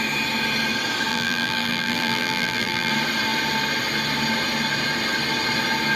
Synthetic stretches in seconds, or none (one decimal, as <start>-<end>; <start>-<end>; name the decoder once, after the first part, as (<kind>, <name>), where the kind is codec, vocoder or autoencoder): 1.1-2.9 (vocoder, BigVGAN v2)

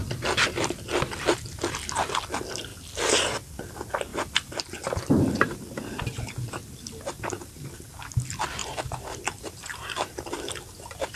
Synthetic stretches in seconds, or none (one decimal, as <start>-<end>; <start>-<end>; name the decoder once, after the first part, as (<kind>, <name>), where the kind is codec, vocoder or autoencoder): 2.7-3.6 (vocoder, BigVGAN v2); 4.1-5.6; 8.6-10.5

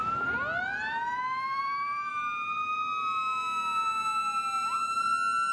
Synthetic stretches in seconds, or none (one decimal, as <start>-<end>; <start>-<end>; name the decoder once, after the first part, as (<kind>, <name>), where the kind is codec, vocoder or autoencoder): 0.0-2.1 (vocoder, BigVGAN v2)

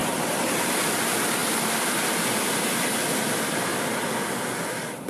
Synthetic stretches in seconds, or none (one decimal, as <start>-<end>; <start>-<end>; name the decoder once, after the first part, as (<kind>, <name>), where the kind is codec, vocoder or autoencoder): 0.0-3.7 (vocoder, BigVGAN v2)